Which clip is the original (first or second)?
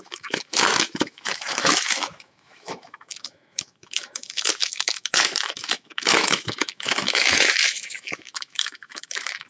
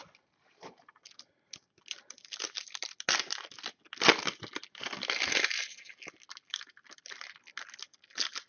second